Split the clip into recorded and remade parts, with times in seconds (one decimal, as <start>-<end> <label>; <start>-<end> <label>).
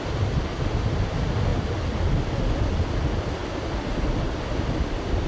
0.0-5.3 recorded